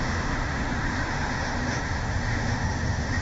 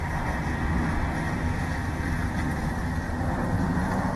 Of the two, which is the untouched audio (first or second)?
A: second